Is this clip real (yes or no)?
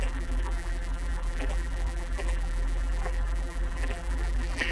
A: no